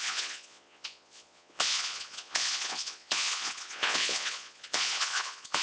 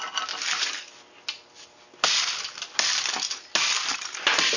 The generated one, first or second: first